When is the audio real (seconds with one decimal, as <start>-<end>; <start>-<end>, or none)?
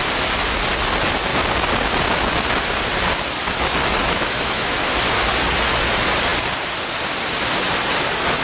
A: 0.0-4.0; 4.8-8.4